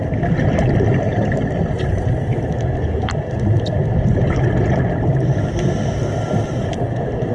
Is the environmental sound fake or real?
real